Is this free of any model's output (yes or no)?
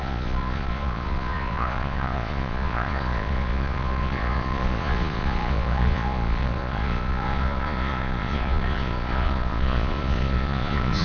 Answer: no